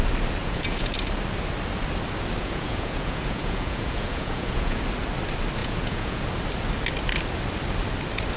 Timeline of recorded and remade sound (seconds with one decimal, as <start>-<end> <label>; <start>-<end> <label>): 0.0-0.4 recorded; 0.4-0.9 remade; 0.9-2.4 recorded; 2.4-4.8 remade; 4.8-5.6 recorded; 5.6-6.2 remade; 6.2-8.4 recorded